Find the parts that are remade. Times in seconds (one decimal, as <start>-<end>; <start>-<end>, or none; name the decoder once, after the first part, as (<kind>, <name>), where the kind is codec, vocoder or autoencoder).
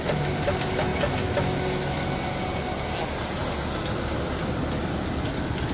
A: 0.0-0.9 (vocoder, BigVGAN v2); 4.3-5.7